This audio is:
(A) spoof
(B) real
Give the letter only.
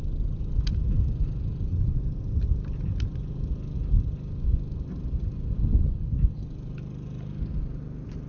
B